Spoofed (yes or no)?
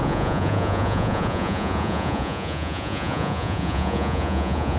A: yes